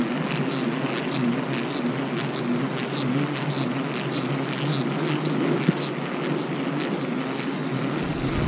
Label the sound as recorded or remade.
recorded